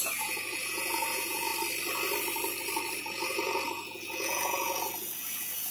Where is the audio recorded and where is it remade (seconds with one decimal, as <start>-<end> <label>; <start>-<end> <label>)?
0.0-1.5 remade; 1.5-3.0 recorded; 3.0-5.7 remade